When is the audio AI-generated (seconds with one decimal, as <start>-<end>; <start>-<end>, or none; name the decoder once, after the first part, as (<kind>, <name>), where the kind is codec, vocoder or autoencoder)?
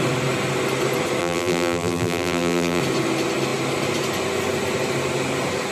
1.2-2.8 (vocoder, BigVGAN v2)